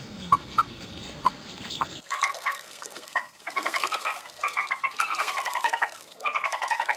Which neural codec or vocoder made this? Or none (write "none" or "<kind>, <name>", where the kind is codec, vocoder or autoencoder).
codec, SNAC